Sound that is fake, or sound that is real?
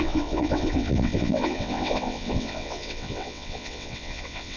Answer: fake